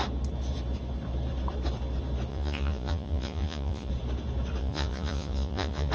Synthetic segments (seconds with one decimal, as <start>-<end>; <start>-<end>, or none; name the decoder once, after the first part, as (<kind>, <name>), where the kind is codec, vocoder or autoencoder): 2.3-3.9 (vocoder, Vocos); 4.6-5.9